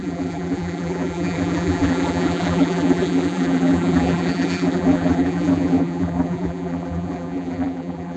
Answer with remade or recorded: remade